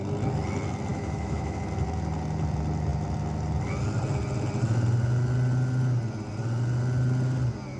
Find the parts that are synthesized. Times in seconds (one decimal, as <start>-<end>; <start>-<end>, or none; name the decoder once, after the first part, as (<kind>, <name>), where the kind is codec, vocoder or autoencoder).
0.9-1.6 (autoencoder, DAC-VAE)